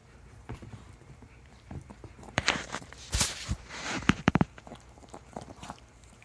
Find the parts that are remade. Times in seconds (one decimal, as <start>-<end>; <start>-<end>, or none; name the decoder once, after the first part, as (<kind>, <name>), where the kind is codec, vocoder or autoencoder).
0.0-6.2 (vocoder, BigVGAN v2)